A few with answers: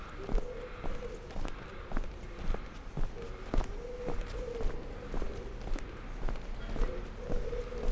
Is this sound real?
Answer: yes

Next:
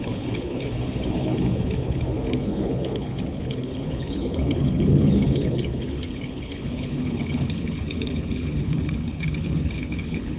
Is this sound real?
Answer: no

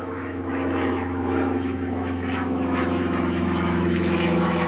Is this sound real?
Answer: no